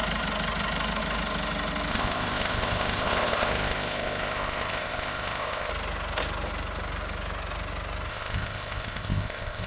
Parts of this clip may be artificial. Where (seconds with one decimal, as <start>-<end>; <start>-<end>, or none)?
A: 1.9-5.7; 8.1-9.7